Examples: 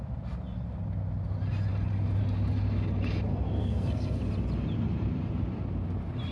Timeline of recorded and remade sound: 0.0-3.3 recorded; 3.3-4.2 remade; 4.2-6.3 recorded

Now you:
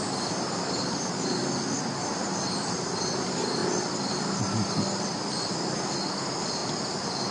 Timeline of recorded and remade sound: 0.0-1.4 remade; 1.4-2.0 recorded; 2.0-3.6 remade; 3.6-6.1 recorded; 6.1-6.6 remade; 6.6-7.3 recorded

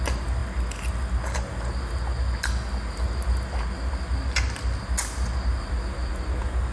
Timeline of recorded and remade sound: 0.0-6.7 recorded